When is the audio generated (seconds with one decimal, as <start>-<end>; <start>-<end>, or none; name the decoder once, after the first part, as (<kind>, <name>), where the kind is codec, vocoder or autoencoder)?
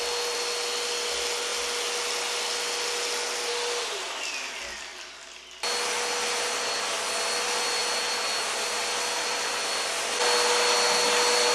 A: none